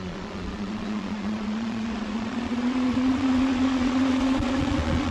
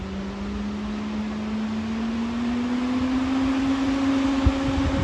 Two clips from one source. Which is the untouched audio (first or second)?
second